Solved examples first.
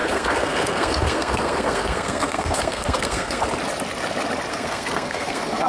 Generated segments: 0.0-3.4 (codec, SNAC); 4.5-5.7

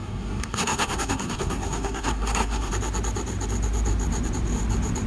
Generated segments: 0.0-2.7 (codec, SNAC)

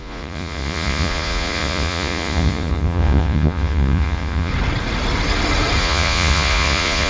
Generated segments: 0.0-4.5 (vocoder, Vocos); 5.8-7.1

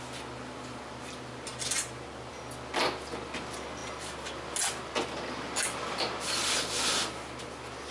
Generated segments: none

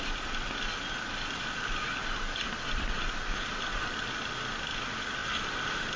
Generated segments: none

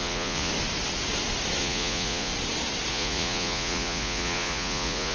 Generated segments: 0.0-0.5 (vocoder, Vocos); 1.6-2.3; 2.9-5.1